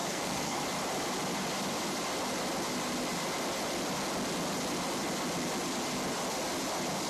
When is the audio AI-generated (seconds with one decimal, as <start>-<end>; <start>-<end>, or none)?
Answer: 0.0-0.6